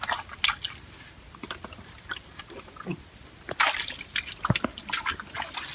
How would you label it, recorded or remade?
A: recorded